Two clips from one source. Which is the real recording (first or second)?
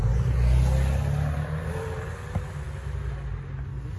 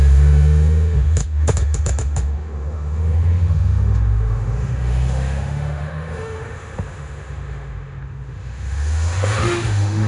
first